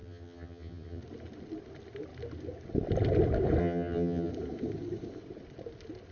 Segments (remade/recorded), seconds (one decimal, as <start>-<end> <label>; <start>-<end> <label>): 0.0-1.0 remade; 1.0-3.6 recorded; 3.6-4.3 remade; 4.3-6.1 recorded